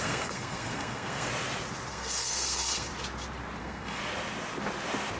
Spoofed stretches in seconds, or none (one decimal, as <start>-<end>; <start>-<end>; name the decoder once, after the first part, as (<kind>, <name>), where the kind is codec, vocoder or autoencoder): 0.0-1.3 (codec, SNAC); 1.9-2.9; 3.6-4.0